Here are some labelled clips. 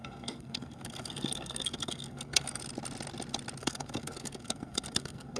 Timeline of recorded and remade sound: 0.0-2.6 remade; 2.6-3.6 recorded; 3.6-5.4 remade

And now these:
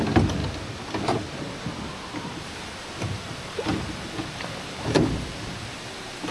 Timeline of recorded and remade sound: 0.0-6.3 recorded

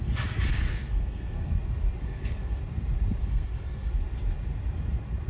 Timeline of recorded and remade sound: 0.0-0.5 recorded; 0.5-1.6 remade; 1.6-2.0 recorded; 2.0-2.6 remade; 2.6-3.2 recorded; 3.2-3.9 remade; 3.9-5.3 recorded

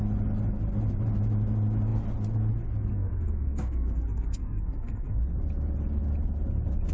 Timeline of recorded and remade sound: 0.0-2.9 recorded; 2.9-5.2 remade; 5.2-6.9 recorded

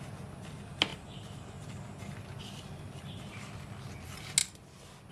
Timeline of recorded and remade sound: 0.0-5.1 recorded